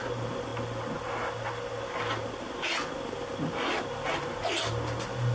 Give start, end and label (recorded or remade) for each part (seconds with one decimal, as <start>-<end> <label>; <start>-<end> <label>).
0.0-5.3 recorded